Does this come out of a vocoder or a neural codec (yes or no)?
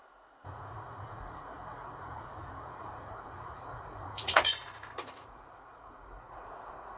yes